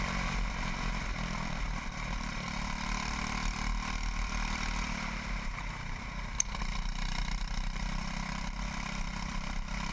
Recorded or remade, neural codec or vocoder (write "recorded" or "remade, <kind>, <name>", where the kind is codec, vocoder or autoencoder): remade, vocoder, BigVGAN v2